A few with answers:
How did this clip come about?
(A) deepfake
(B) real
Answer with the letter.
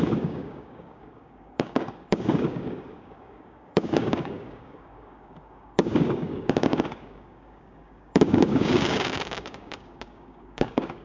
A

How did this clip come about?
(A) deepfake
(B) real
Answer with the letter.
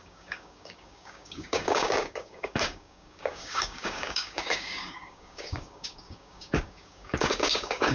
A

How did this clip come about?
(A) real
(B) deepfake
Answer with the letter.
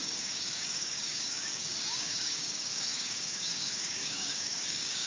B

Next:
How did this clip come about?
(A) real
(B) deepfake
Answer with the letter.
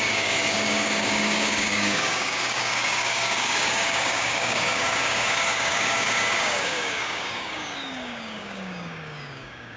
B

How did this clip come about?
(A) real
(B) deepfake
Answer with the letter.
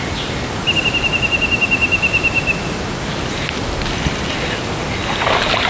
A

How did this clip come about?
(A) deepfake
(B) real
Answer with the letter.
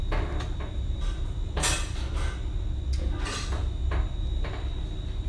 B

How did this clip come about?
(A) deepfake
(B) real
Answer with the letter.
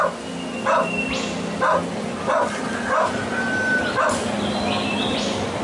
B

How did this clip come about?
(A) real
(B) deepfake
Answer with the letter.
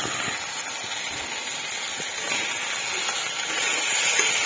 A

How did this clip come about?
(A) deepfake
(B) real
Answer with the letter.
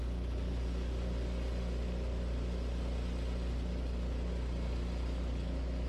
B